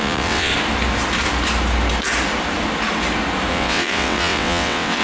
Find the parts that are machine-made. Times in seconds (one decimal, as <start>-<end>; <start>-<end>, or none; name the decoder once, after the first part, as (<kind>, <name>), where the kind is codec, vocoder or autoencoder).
0.0-0.5 (vocoder, WaveNeXt); 3.5-5.0

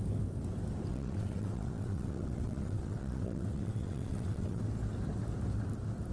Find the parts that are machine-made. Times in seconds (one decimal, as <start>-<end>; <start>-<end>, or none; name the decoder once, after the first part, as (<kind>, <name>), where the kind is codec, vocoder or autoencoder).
0.9-4.6 (vocoder, WaveNeXt)

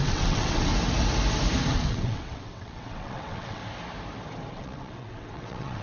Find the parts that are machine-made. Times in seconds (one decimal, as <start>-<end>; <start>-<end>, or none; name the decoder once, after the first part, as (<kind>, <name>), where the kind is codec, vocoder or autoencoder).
0.0-0.7 (vocoder, WaveNeXt); 1.7-3.6; 4.5-5.8

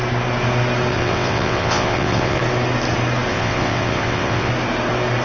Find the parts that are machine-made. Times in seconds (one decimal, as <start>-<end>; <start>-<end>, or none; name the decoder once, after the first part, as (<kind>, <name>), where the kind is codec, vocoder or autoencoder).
0.9-2.4 (vocoder, WaveNeXt); 3.3-4.5

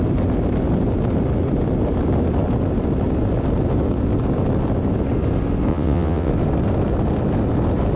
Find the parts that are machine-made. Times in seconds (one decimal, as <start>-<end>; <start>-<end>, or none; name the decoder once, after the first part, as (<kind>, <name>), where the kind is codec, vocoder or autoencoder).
5.7-6.3 (vocoder, WaveNeXt)

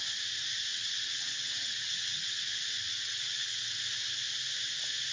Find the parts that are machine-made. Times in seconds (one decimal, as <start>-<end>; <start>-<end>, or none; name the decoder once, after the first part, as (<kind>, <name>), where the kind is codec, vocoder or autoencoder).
0.7-3.8 (vocoder, WaveNeXt)